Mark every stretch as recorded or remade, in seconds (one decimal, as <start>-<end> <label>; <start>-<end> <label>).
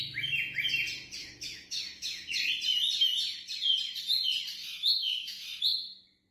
0.0-1.2 recorded; 1.2-2.4 remade; 2.4-4.6 recorded; 4.6-5.6 remade; 5.6-6.3 recorded